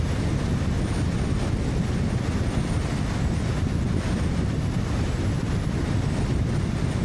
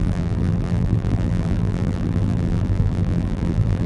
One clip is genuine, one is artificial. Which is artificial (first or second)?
second